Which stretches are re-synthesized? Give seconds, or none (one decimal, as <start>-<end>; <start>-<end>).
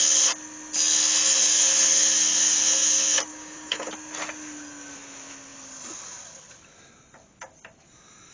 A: 3.3-3.9